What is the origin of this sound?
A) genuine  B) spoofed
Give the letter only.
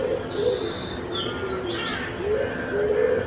A